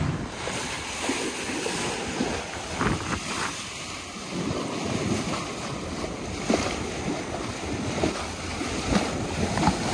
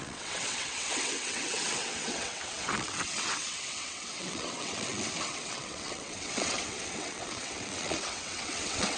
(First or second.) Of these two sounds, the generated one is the second